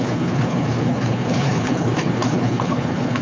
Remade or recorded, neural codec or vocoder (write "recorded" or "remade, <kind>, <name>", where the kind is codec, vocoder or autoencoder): remade, codec, HILCodec